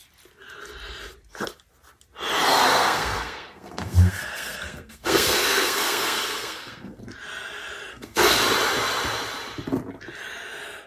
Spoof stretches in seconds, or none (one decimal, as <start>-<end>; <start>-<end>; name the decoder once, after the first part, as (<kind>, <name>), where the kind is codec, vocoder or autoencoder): 2.7-7.0 (codec, SNAC); 7.9-8.4